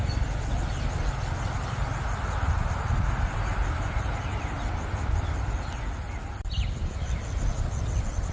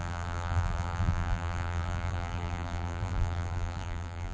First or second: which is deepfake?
second